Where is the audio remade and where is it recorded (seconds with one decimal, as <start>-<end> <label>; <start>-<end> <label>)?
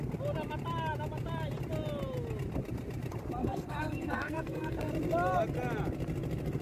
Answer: 0.0-3.4 recorded; 3.4-4.9 remade; 4.9-6.6 recorded